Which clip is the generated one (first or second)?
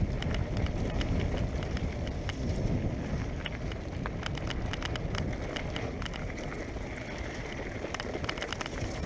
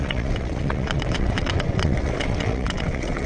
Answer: second